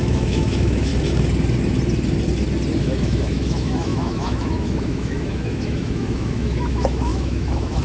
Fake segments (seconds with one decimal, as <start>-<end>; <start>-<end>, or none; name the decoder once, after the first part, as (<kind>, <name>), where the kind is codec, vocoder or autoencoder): 0.0-0.9 (autoencoder, DAC-VAE); 2.8-7.8